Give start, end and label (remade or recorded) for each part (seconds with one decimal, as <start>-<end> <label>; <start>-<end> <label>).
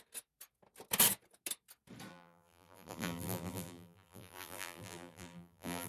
0.0-2.1 recorded; 2.1-5.9 remade